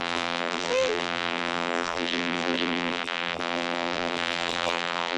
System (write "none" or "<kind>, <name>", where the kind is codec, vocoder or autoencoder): vocoder, BigVGAN v2